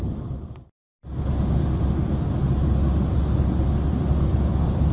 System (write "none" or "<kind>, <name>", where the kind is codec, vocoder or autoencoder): none